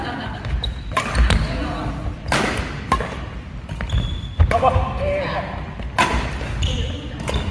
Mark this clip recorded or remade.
recorded